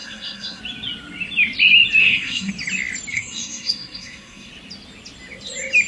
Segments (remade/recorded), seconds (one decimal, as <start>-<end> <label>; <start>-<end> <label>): 0.0-0.6 remade; 0.6-2.0 recorded; 2.0-2.5 remade; 2.5-3.1 recorded; 3.1-4.5 remade; 4.5-5.9 recorded